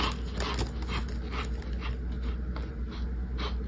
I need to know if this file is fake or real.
real